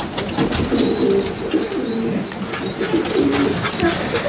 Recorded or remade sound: recorded